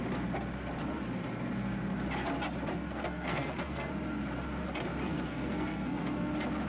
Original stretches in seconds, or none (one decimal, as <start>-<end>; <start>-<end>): 0.0-2.7; 3.9-5.0; 6.3-6.7